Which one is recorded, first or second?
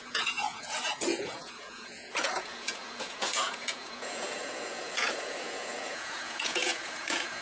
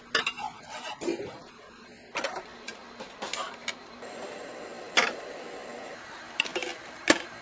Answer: second